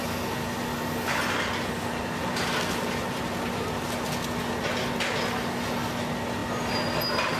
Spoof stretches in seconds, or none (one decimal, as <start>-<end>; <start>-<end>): none